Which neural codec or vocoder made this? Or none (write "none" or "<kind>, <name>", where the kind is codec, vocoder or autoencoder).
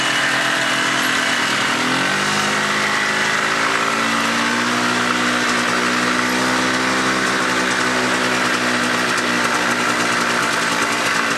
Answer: none